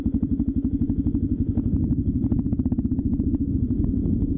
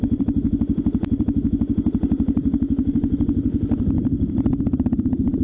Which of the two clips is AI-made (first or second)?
second